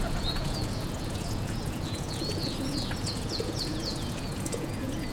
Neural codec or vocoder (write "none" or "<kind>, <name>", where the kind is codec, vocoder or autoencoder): vocoder, Vocos